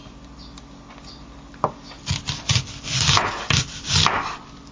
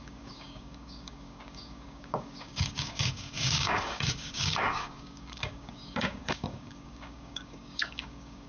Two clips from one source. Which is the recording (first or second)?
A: first